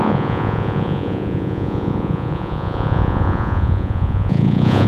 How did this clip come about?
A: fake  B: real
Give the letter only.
A